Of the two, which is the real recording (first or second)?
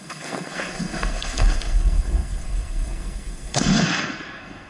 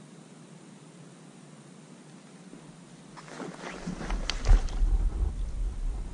second